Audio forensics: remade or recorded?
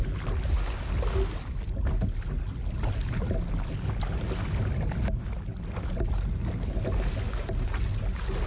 recorded